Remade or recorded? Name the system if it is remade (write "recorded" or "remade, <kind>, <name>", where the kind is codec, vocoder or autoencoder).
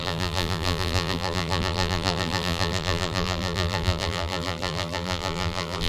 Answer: remade, vocoder, BigVGAN v2